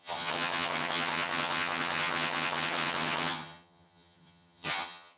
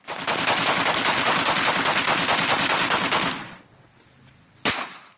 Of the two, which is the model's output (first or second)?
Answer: first